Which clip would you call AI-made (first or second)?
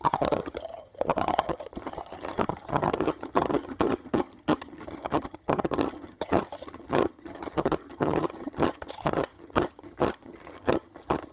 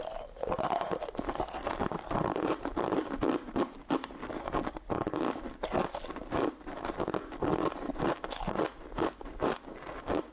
first